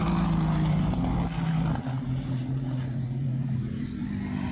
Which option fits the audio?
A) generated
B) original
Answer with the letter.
A